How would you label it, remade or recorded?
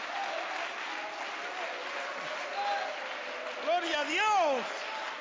recorded